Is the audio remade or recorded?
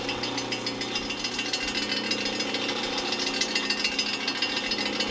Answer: recorded